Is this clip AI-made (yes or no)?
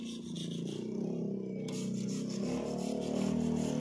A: no